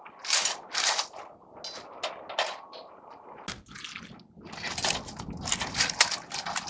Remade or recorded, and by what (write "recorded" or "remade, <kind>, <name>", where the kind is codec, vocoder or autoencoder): recorded